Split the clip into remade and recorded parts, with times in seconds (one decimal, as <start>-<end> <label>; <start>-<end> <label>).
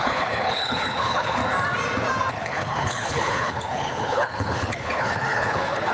0.0-1.4 remade; 1.4-2.3 recorded; 2.3-5.9 remade